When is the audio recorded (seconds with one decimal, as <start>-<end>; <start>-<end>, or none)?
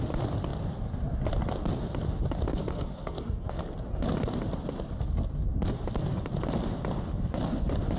0.0-2.5; 3.6-8.0